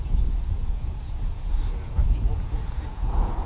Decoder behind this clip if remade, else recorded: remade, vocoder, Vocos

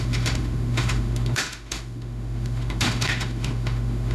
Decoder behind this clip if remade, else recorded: remade, autoencoder, DAC-VAE